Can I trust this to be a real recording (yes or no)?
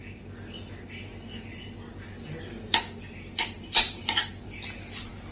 yes